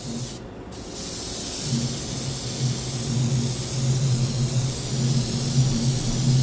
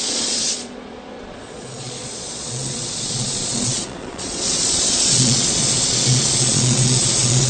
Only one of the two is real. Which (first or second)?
first